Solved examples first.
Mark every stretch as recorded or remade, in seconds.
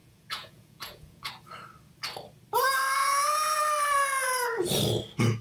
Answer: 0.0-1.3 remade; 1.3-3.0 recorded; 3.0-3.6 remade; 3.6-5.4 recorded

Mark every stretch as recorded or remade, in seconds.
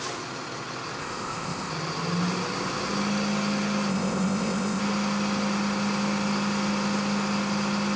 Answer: 0.0-1.0 recorded; 1.0-1.7 remade; 1.7-3.9 recorded; 3.9-4.8 remade; 4.8-8.0 recorded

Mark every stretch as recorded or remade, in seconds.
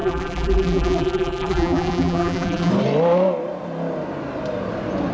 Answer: 0.0-2.7 remade; 2.7-5.1 recorded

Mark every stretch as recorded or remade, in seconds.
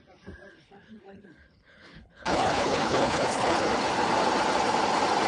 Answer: 0.0-0.5 recorded; 0.5-3.7 remade; 3.7-5.3 recorded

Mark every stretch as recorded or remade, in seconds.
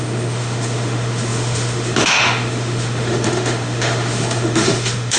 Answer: 0.0-5.2 remade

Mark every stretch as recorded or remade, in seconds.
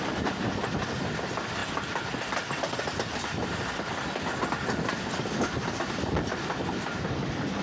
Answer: 0.0-7.6 recorded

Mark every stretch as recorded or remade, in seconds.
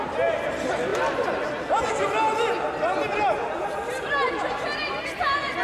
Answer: 0.0-5.6 recorded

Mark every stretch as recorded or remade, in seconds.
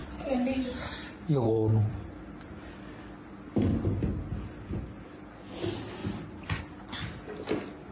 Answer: 0.0-2.7 remade; 2.7-7.9 recorded